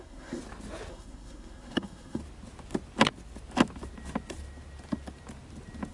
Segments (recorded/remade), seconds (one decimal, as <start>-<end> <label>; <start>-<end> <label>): 0.0-0.4 remade; 0.4-0.9 recorded; 0.9-2.2 remade; 2.2-5.9 recorded